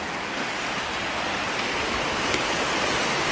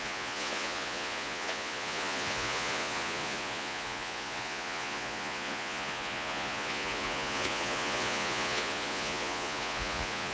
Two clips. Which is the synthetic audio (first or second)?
second